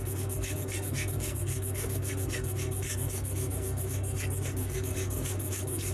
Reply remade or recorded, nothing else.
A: remade